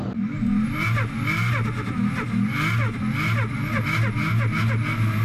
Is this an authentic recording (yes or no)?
yes